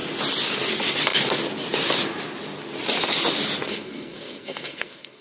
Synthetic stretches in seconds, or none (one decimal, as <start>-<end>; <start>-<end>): 3.7-5.2